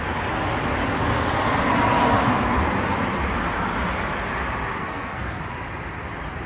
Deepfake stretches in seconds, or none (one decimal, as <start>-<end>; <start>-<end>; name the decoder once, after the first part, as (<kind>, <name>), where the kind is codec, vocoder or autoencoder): 4.8-5.4 (codec, SNAC)